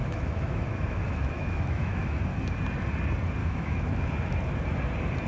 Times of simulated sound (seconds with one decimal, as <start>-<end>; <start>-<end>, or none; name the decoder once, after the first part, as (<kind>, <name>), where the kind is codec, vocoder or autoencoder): 0.0-2.2 (autoencoder, DAC-VAE); 3.4-4.0